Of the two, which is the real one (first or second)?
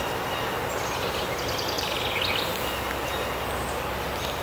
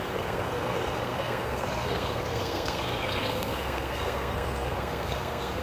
first